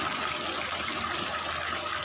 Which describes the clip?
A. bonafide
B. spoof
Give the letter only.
A